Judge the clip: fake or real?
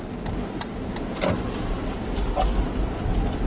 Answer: real